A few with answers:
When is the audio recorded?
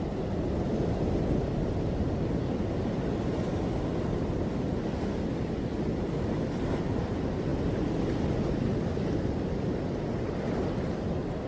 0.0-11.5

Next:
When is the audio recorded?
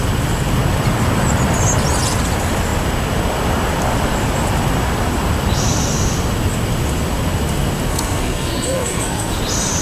0.0-7.9; 9.4-9.8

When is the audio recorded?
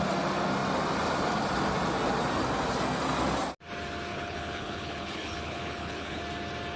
0.0-4.1; 6.2-6.8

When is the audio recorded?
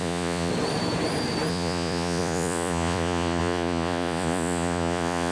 0.5-1.5